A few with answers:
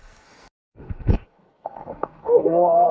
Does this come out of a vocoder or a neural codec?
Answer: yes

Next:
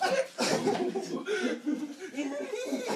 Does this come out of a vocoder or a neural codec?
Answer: no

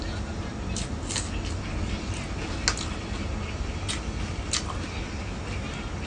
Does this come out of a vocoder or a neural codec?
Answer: no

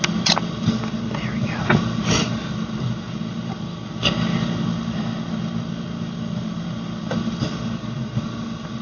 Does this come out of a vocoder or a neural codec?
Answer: no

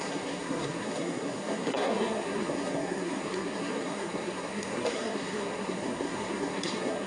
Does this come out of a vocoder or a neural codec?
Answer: yes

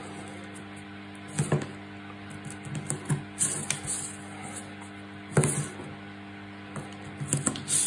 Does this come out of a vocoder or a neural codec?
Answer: no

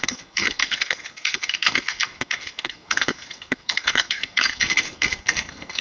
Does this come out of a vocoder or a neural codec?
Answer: yes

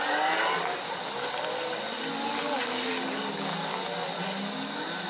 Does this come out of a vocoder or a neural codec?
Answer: no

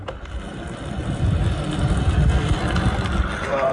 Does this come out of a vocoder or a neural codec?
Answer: no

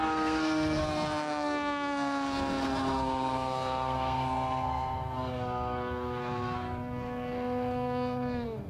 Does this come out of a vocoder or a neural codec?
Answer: yes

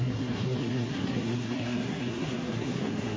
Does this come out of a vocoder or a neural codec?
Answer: yes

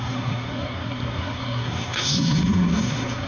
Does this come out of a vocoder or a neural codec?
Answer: yes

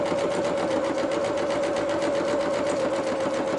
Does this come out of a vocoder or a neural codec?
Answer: no